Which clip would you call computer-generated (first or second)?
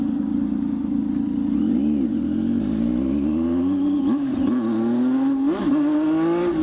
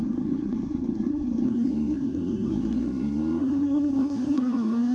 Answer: second